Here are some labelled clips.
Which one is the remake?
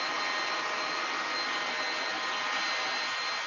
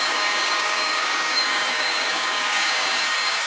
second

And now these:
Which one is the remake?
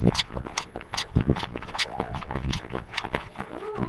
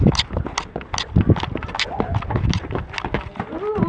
first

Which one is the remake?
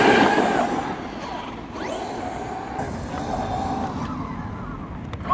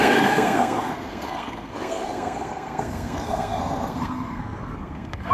second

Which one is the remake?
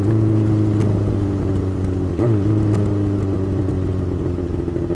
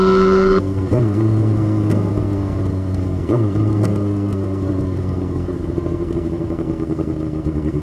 second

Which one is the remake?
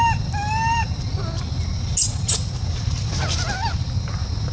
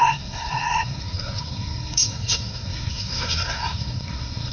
second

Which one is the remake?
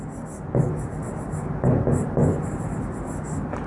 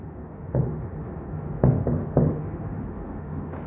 second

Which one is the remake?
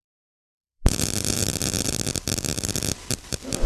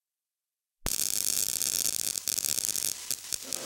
first